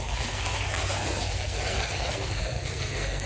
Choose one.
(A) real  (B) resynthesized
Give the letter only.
B